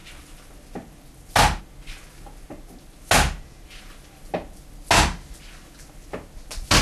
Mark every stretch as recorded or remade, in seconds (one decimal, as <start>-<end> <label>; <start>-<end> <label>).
0.0-6.8 recorded